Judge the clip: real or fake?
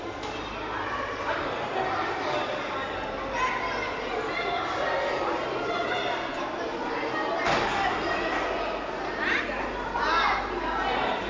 real